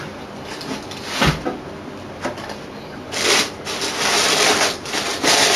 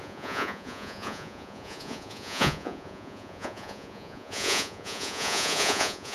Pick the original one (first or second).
first